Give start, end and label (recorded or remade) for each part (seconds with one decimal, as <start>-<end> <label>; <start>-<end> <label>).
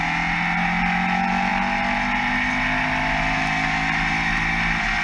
0.0-5.0 recorded